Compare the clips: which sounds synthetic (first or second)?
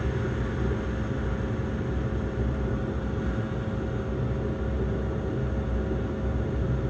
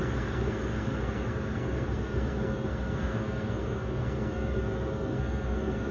second